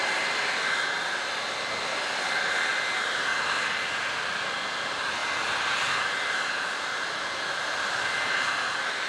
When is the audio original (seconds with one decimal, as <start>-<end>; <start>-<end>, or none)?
0.0-9.1